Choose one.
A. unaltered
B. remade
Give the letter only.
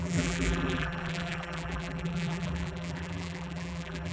B